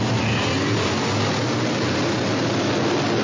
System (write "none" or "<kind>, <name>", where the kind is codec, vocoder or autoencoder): none